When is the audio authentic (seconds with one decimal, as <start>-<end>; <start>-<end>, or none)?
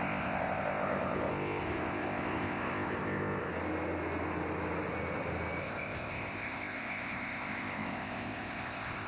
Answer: 3.5-5.6